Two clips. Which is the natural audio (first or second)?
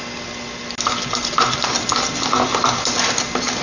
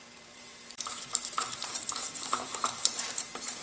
first